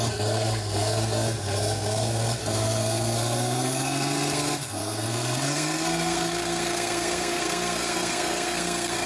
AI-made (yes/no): yes